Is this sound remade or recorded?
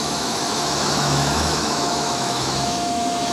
remade